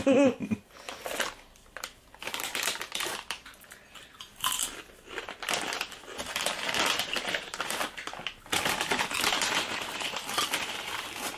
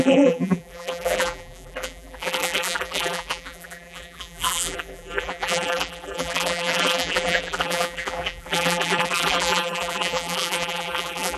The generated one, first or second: second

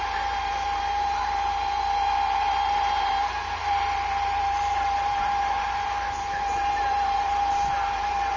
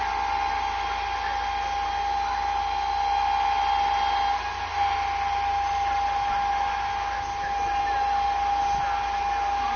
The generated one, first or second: first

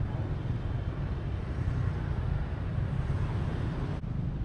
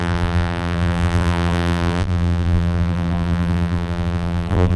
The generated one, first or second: second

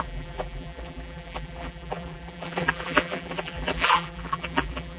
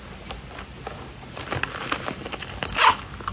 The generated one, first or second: first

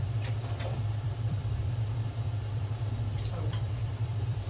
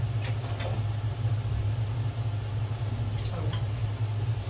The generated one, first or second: first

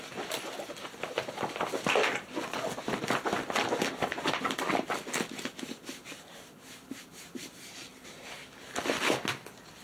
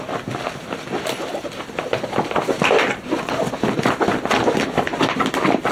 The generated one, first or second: second